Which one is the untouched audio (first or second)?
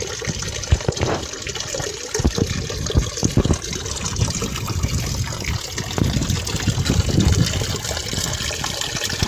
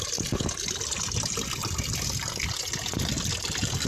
first